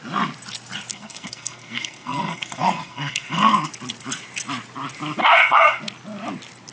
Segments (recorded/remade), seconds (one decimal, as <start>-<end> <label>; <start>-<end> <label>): 0.0-0.9 recorded; 0.9-3.7 remade; 3.7-5.2 recorded; 5.2-5.8 remade; 5.8-6.7 recorded